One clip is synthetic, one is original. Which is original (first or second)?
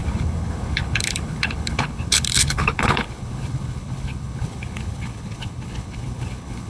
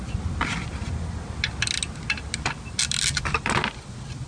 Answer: second